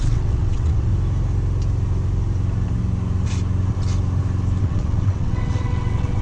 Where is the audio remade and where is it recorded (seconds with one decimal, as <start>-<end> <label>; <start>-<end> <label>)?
0.0-0.9 remade; 0.9-4.6 recorded; 4.6-6.2 remade

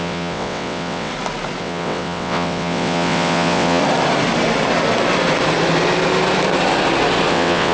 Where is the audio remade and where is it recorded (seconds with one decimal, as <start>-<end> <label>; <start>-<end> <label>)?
0.0-1.1 remade; 1.1-1.6 recorded; 1.6-3.8 remade; 3.8-7.3 recorded; 7.3-7.7 remade

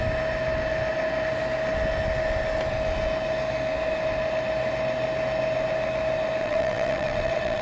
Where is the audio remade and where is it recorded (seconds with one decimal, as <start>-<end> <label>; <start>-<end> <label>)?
0.0-6.4 recorded; 6.4-7.6 remade